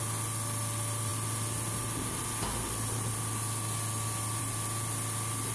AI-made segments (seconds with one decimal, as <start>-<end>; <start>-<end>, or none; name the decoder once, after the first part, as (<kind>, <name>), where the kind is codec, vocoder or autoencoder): none